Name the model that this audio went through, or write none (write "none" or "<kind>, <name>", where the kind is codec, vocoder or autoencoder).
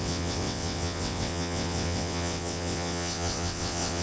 vocoder, WaveNeXt